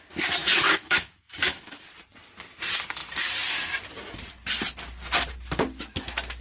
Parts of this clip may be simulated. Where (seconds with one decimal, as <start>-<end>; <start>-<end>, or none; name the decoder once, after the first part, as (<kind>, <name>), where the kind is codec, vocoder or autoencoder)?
0.4-1.8 (autoencoder, DAC-VAE)